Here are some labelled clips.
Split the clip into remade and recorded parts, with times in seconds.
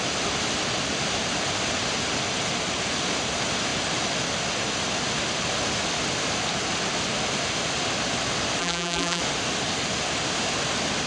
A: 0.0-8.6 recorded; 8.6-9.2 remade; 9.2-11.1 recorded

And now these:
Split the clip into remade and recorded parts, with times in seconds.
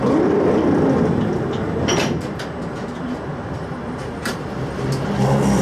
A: 0.0-1.9 recorded; 1.9-4.6 remade; 4.6-5.6 recorded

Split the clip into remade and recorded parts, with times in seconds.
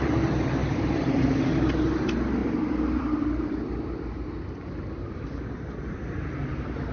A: 0.0-0.6 recorded; 0.6-1.2 remade; 1.2-2.4 recorded; 2.4-6.1 remade; 6.1-6.9 recorded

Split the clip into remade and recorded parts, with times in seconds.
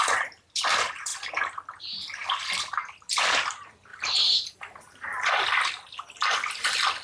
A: 0.0-3.9 recorded; 3.9-5.3 remade; 5.3-7.0 recorded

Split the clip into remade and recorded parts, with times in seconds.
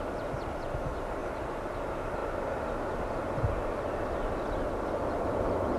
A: 0.0-1.2 recorded; 1.2-1.8 remade; 1.8-5.8 recorded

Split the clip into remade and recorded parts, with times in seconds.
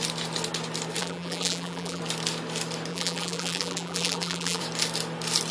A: 0.0-1.0 recorded; 1.0-2.0 remade; 2.0-2.9 recorded; 2.9-4.6 remade; 4.6-5.5 recorded